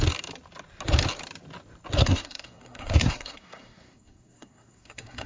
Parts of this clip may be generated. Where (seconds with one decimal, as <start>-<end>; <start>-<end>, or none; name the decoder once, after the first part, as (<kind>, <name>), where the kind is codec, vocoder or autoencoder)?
2.0-5.3 (codec, SNAC)